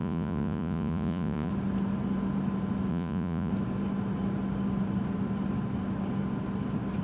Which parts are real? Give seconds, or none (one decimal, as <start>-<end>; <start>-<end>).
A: 1.5-2.9; 3.5-7.0